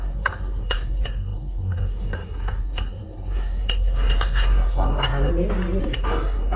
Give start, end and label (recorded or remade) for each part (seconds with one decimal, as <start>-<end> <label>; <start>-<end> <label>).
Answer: 0.0-5.3 remade; 5.3-5.8 recorded; 5.8-6.6 remade

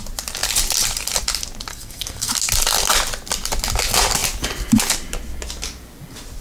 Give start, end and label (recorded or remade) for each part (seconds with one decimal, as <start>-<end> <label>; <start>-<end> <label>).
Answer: 0.0-1.7 recorded; 1.7-2.3 remade; 2.3-6.4 recorded

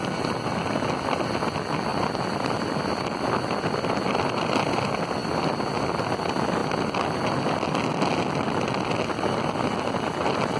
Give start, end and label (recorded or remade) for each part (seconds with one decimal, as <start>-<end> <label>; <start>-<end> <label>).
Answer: 0.0-10.6 recorded